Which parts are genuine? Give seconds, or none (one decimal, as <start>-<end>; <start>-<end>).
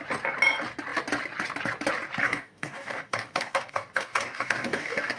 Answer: 0.0-2.2